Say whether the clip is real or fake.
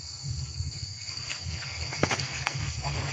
fake